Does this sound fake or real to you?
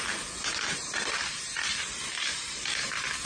real